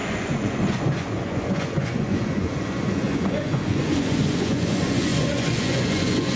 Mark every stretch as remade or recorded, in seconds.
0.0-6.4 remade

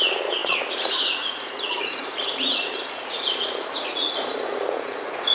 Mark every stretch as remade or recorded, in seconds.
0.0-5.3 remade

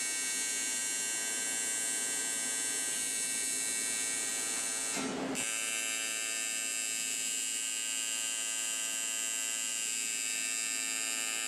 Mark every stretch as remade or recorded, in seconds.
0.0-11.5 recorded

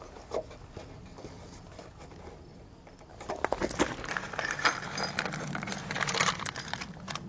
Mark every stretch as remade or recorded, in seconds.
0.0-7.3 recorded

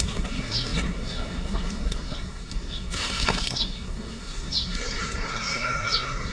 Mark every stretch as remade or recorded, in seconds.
0.0-6.3 remade

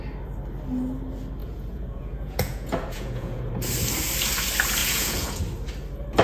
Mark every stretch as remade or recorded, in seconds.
0.0-1.4 recorded; 1.4-3.5 remade; 3.5-4.8 recorded; 4.8-5.4 remade; 5.4-6.2 recorded

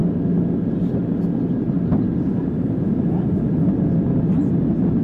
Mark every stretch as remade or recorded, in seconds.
0.0-5.0 recorded

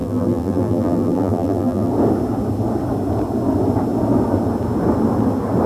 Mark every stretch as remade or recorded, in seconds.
0.0-1.9 remade; 1.9-5.7 recorded